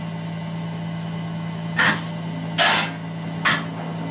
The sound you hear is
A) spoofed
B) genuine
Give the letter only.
B